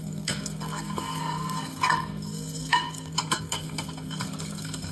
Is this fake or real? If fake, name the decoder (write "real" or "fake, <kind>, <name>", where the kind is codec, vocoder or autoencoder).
fake, codec, SNAC